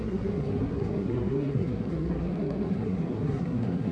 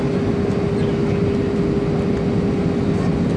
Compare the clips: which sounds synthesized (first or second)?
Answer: first